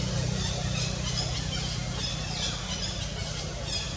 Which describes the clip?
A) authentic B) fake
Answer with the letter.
A